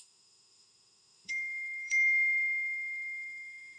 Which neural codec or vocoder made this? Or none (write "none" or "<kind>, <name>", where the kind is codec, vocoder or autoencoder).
autoencoder, DAC-VAE